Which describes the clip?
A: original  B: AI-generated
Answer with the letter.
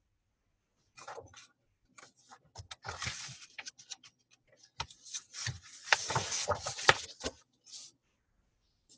A